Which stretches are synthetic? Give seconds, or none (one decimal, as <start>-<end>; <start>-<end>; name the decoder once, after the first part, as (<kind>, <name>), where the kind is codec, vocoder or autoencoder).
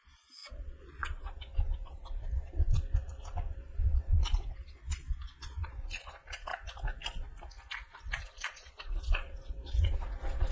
0.0-6.5 (vocoder, Vocos); 8.2-10.5